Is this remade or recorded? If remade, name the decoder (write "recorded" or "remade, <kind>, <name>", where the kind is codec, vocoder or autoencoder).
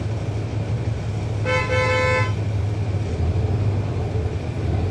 recorded